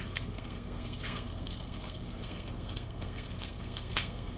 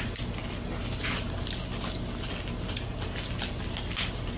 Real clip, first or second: second